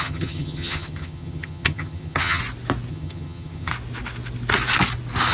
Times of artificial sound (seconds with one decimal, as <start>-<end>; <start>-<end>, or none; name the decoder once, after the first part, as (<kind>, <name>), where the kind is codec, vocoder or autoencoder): 0.0-2.4 (vocoder, HiFi-GAN); 2.9-3.7